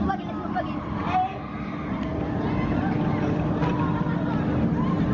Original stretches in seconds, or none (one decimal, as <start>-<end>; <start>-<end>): 0.0-5.1